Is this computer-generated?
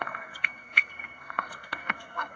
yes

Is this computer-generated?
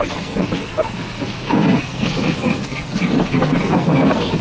yes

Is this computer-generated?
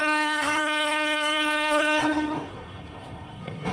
yes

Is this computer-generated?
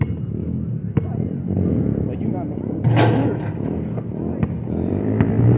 no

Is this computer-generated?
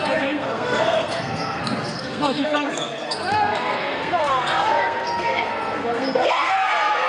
yes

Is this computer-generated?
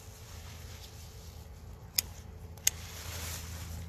no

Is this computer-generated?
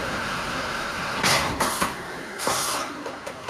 yes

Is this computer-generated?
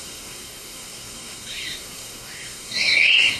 yes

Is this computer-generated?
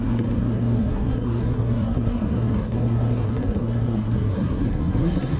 yes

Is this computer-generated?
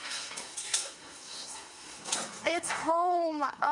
yes